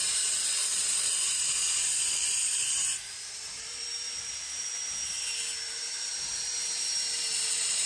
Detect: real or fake fake